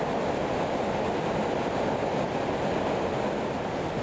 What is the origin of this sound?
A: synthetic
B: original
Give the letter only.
B